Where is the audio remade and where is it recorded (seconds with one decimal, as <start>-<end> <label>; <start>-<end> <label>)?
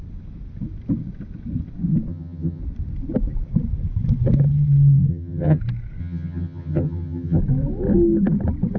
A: 0.0-2.1 recorded; 2.1-2.6 remade; 2.6-5.1 recorded; 5.1-5.6 remade; 5.6-6.0 recorded; 6.0-7.4 remade; 7.4-8.8 recorded